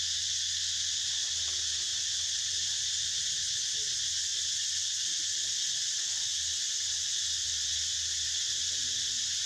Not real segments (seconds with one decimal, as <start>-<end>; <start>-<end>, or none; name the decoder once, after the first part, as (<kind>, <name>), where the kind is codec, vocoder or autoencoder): 1.9-3.3 (vocoder, BigVGAN v2); 4.3-5.2